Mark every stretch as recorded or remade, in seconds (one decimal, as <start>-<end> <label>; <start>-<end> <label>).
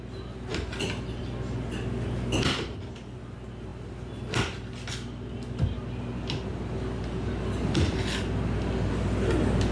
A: 0.0-9.7 recorded